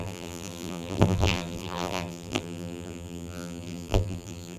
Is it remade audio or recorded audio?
remade